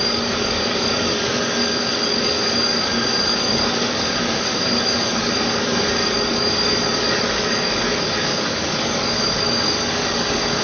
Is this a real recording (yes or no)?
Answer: no